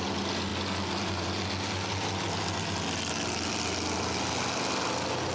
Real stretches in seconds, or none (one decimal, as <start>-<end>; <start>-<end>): 0.0-5.3